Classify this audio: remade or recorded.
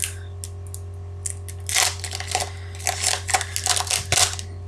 recorded